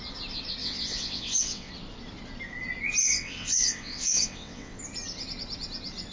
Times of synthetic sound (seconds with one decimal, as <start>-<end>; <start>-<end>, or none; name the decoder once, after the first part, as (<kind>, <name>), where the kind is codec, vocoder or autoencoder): 0.6-1.7 (vocoder, WaveNeXt); 3.0-4.8